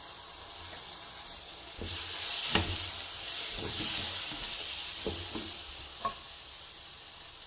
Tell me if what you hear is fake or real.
real